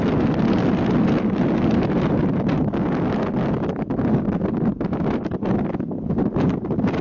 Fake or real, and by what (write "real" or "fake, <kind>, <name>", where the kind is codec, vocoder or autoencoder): real